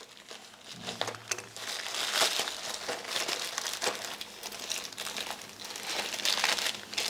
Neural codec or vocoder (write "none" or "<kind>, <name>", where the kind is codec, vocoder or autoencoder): none